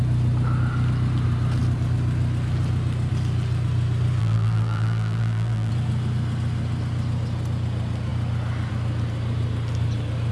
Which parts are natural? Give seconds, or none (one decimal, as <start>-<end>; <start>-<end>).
0.0-4.2; 5.7-10.3